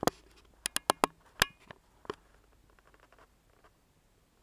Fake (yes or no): no